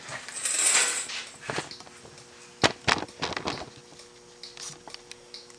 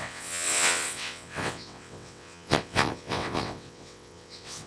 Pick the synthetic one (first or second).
second